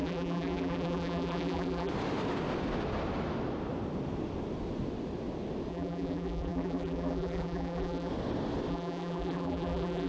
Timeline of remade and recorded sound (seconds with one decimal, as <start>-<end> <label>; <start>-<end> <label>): 0.0-1.9 remade; 1.9-5.7 recorded; 5.7-8.1 remade; 8.1-8.7 recorded; 8.7-10.1 remade